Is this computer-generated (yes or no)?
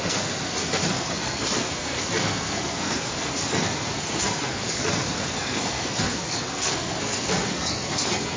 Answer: yes